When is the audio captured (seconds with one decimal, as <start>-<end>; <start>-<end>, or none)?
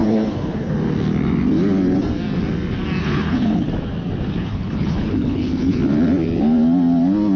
0.7-3.0; 3.7-4.4; 5.8-7.4